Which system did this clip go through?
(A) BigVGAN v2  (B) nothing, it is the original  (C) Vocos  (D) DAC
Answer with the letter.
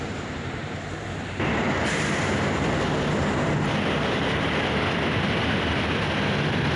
B